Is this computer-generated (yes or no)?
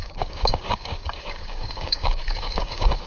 yes